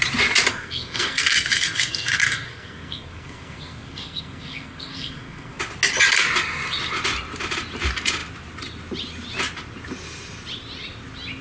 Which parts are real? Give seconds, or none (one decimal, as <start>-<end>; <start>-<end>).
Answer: 0.0-0.5; 5.6-11.4